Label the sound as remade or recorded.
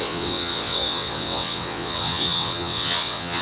remade